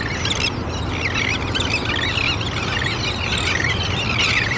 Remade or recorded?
recorded